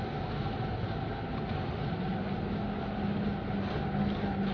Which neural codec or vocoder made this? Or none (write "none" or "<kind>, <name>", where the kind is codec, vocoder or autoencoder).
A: none